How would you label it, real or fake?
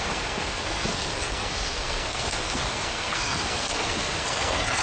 fake